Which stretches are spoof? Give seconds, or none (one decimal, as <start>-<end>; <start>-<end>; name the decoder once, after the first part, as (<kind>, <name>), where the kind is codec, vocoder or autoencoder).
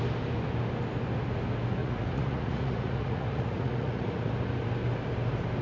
1.8-4.3 (vocoder, Vocos)